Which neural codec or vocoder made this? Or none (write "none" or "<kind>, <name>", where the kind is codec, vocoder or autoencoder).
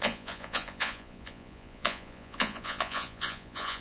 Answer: vocoder, Vocos